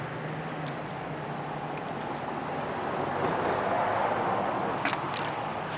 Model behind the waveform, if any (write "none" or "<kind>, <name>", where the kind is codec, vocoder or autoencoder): none